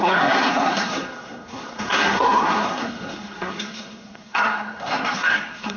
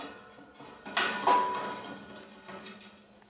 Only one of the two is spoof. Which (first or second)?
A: first